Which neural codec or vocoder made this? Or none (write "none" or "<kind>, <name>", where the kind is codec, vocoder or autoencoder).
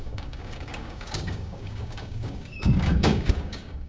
codec, DAC